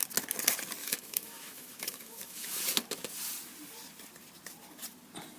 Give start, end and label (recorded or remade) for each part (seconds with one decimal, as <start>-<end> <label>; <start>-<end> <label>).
0.0-0.8 recorded; 0.8-2.6 remade; 2.6-5.4 recorded